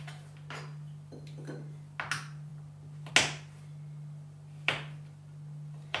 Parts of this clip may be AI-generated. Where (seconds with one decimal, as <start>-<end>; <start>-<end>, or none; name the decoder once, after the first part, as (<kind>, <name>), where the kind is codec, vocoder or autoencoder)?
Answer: none